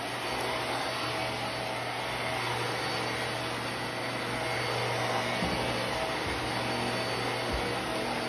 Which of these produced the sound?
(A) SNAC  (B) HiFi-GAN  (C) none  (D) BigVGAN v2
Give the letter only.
C